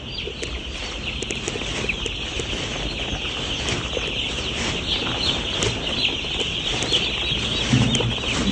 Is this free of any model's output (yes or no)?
yes